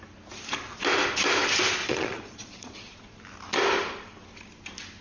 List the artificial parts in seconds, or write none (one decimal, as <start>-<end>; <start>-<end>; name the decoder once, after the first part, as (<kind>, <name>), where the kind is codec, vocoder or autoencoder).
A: 1.8-3.2 (vocoder, Vocos)